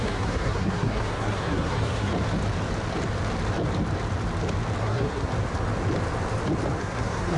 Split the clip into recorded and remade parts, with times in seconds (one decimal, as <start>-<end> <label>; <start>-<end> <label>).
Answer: 0.0-2.1 remade; 2.1-4.8 recorded; 4.8-5.3 remade; 5.3-6.8 recorded; 6.8-7.4 remade